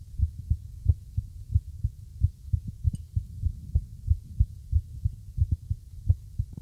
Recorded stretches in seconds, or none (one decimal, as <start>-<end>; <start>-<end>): 0.0-2.1; 3.2-6.6